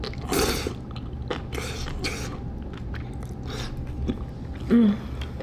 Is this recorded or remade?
recorded